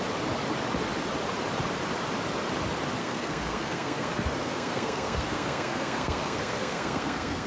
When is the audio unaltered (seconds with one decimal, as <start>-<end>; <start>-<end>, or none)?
0.0-3.0

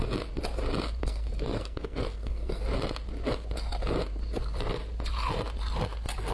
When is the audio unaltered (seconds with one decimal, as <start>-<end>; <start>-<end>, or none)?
0.0-1.0; 2.6-6.3

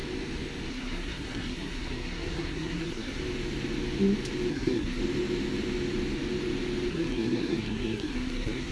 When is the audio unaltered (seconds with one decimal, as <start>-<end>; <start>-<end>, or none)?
0.0-0.7; 3.2-4.5; 5.0-6.9

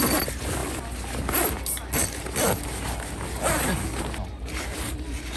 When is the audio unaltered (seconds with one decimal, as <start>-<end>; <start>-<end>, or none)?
0.0-5.4

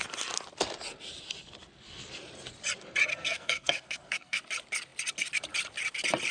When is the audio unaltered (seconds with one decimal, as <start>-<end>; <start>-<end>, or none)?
0.0-3.1; 4.4-6.3

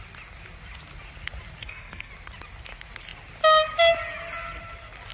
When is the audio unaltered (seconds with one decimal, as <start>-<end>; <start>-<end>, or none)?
0.0-1.6; 2.1-5.1

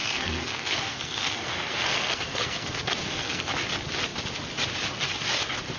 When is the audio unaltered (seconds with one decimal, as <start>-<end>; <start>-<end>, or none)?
3.5-5.8